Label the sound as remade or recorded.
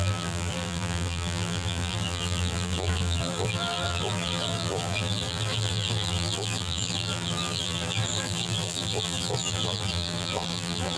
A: remade